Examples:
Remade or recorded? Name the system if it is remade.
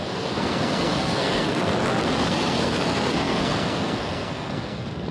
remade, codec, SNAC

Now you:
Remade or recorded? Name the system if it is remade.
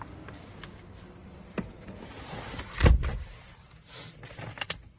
recorded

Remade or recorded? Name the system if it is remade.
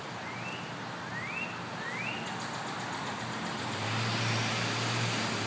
recorded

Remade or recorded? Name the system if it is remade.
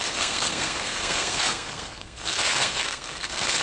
remade, codec, SNAC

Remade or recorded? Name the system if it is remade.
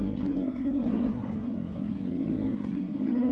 remade, codec, SNAC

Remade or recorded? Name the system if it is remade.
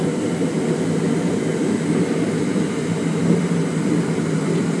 recorded